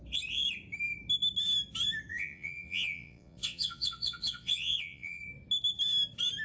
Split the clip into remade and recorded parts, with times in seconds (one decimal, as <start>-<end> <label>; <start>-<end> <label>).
0.0-2.1 recorded; 2.1-5.2 remade; 5.2-6.4 recorded